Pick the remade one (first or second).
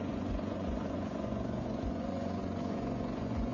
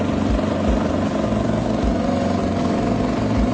first